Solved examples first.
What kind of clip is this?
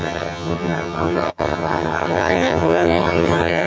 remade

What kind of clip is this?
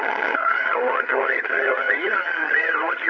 remade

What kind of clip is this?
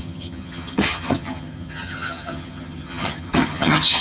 remade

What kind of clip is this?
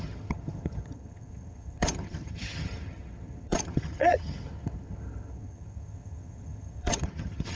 remade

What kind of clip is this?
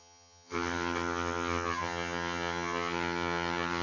remade